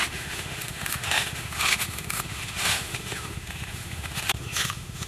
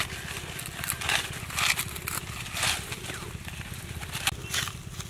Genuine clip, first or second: second